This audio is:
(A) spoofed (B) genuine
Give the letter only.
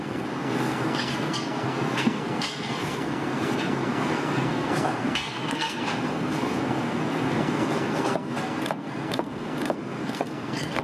A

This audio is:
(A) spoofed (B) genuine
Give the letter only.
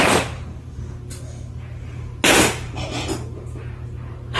B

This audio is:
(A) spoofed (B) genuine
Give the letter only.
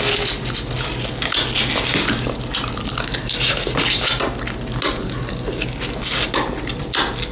B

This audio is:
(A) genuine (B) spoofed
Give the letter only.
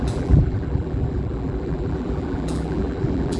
B